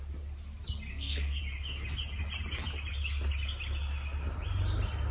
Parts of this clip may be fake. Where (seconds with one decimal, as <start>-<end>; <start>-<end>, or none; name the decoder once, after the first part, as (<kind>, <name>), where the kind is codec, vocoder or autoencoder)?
0.9-1.4 (codec, SNAC)

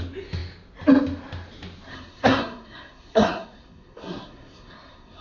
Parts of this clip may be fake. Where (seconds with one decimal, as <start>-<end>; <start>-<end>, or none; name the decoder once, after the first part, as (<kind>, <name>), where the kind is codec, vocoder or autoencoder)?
1.9-5.2 (codec, SNAC)